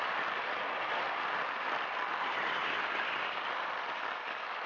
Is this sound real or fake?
fake